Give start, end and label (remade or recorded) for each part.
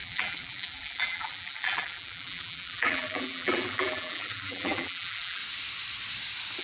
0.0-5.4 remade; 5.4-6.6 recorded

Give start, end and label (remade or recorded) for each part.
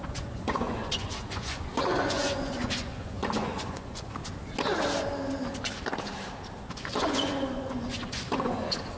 0.0-4.2 remade; 4.2-6.6 recorded; 6.6-9.0 remade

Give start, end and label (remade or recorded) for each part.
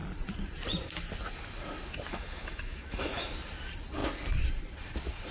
0.0-2.1 recorded; 2.1-3.3 remade; 3.3-5.3 recorded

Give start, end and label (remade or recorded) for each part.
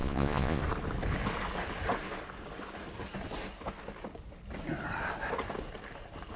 0.0-0.6 remade; 0.6-6.4 recorded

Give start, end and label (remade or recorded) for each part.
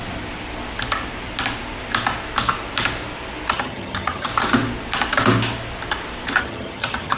0.0-3.5 recorded; 3.5-4.3 remade; 4.3-6.4 recorded; 6.4-7.2 remade